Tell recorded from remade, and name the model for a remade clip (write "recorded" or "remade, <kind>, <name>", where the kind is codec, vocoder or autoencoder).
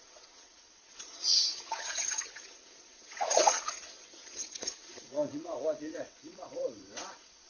remade, vocoder, WaveNeXt